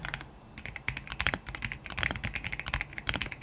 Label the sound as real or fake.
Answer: real